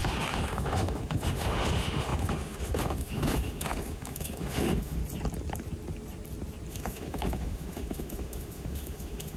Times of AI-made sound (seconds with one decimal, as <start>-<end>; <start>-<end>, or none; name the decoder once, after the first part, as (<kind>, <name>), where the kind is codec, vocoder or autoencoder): 0.0-5.0 (autoencoder, DAC-VAE); 6.7-9.4